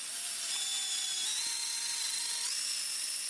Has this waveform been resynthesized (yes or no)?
no